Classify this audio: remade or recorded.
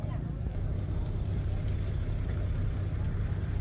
recorded